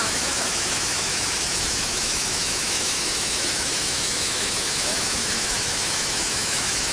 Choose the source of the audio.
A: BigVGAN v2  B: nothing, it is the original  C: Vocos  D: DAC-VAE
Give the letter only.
D